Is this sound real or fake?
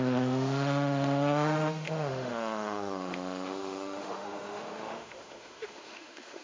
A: fake